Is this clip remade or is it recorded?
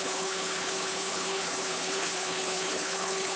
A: remade